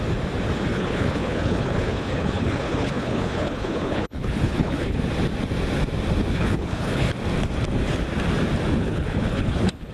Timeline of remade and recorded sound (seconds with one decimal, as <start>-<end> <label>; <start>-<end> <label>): 0.0-0.7 recorded; 0.7-5.0 remade; 5.0-6.3 recorded; 6.3-7.1 remade; 7.1-8.8 recorded; 8.8-9.9 remade